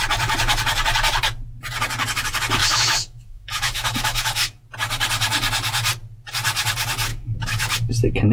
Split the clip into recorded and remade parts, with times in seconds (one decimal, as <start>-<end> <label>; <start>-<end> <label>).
0.0-2.6 recorded; 2.6-4.6 remade; 4.6-7.1 recorded; 7.1-7.9 remade; 7.9-8.3 recorded